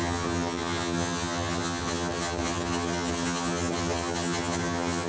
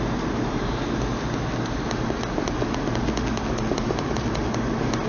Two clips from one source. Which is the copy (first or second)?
first